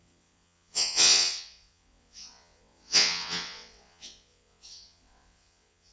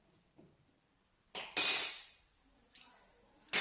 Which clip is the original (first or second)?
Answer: second